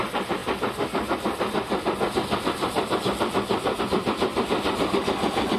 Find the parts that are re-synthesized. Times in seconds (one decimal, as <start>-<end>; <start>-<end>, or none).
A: none